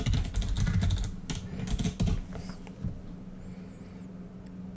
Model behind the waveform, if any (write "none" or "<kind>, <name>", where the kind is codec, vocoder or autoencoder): none